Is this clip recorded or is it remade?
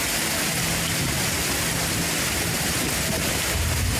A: recorded